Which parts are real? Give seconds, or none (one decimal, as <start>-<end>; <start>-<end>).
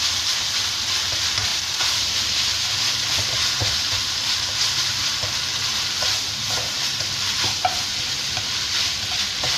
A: 0.0-1.5; 2.1-9.6